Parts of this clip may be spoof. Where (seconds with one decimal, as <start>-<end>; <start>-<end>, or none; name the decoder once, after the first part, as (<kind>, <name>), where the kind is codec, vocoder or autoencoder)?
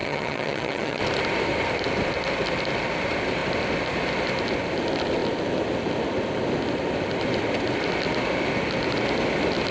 0.0-1.0 (vocoder, HiFi-GAN)